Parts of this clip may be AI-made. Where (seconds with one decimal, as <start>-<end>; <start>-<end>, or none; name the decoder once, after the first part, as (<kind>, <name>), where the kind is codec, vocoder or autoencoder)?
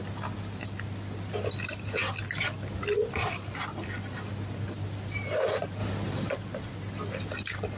none